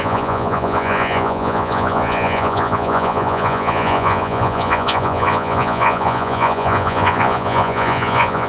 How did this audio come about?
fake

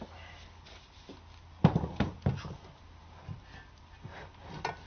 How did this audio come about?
real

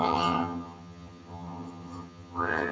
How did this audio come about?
fake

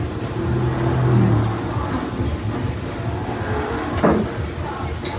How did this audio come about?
real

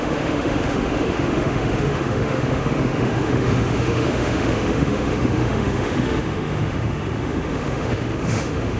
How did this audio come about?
fake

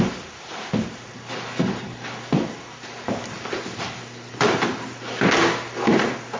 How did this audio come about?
real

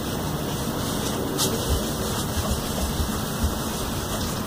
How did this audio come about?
real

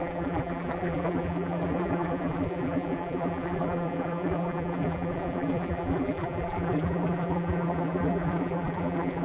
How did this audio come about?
fake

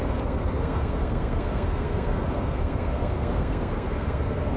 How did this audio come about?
fake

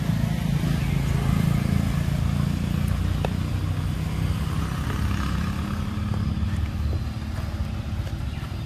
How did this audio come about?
real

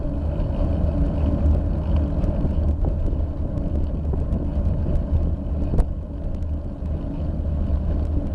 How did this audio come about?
real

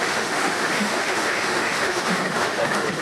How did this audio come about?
fake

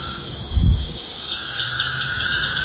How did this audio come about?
fake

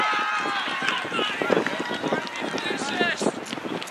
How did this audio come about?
real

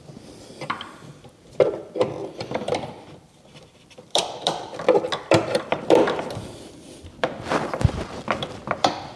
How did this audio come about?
fake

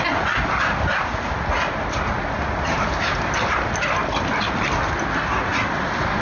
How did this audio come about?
real